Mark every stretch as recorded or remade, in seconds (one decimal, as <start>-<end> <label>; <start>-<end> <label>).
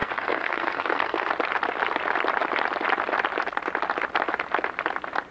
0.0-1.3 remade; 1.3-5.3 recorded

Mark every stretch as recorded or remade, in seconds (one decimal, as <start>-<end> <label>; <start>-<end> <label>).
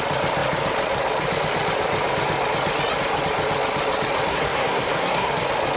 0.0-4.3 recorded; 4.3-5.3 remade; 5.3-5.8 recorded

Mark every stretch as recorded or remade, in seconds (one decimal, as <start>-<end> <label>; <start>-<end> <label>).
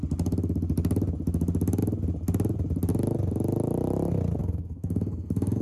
0.0-4.4 recorded; 4.4-5.6 remade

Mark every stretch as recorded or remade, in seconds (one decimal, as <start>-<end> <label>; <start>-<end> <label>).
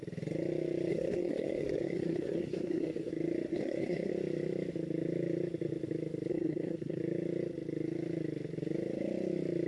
0.0-0.9 recorded; 0.9-3.1 remade; 3.1-3.5 recorded; 3.5-4.1 remade; 4.1-6.3 recorded; 6.3-7.0 remade; 7.0-9.7 recorded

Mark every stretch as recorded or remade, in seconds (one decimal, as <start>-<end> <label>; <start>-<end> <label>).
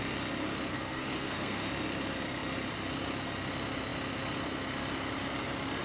0.0-0.7 recorded; 0.7-1.7 remade; 1.7-5.8 recorded